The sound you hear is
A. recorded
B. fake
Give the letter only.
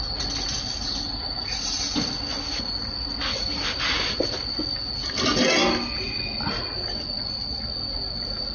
A